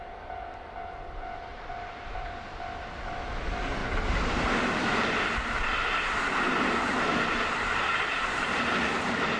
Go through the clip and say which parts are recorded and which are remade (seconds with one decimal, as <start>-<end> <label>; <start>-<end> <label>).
0.0-1.5 recorded; 1.5-2.3 remade; 2.3-3.8 recorded; 3.8-5.1 remade; 5.1-9.4 recorded